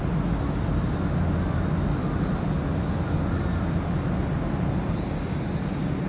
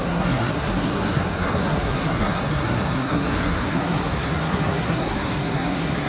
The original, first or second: first